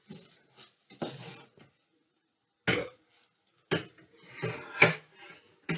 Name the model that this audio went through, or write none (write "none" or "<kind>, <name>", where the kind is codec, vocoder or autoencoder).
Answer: none